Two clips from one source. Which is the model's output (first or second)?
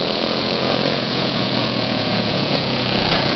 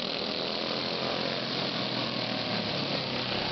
first